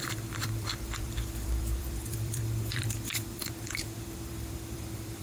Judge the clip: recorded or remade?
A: remade